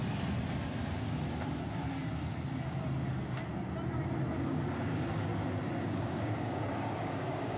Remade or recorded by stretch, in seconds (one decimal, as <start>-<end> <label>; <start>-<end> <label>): 0.0-4.4 recorded; 4.4-5.3 remade; 5.3-5.8 recorded; 5.8-7.6 remade